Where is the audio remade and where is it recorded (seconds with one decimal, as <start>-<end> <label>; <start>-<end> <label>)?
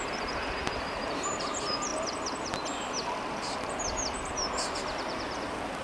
0.0-1.9 remade; 1.9-5.8 recorded